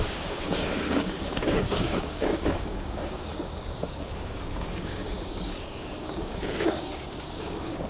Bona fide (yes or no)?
no